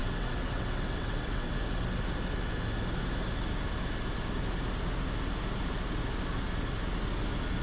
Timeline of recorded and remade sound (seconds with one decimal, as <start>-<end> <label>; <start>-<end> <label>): 0.0-1.5 remade; 1.5-7.6 recorded